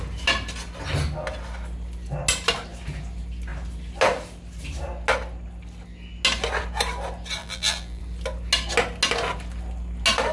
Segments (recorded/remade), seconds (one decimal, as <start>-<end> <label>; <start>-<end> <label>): 0.0-7.4 recorded; 7.4-8.0 remade; 8.0-10.3 recorded